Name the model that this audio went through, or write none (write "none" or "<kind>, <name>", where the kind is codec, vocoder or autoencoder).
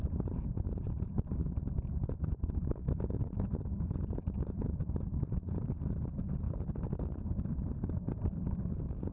none